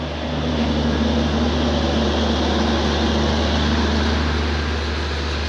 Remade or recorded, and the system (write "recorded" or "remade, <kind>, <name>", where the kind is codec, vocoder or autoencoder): recorded